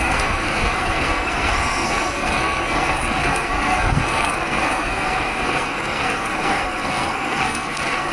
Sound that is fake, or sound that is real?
fake